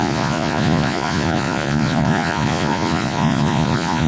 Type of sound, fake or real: fake